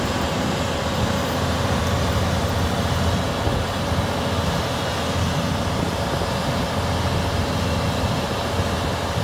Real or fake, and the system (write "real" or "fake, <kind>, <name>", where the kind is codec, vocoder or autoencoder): real